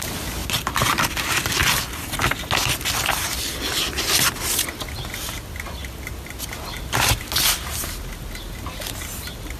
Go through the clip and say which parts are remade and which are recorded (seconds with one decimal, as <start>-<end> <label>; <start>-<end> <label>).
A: 0.0-9.6 recorded